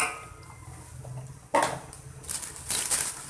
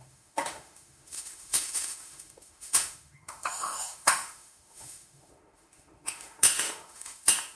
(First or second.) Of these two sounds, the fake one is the second